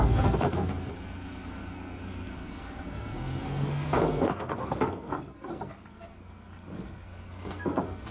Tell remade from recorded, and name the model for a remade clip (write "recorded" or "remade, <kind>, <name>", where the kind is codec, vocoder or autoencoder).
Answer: remade, codec, SNAC